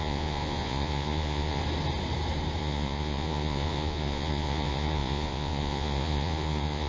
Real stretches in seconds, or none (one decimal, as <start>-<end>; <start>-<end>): 1.6-2.6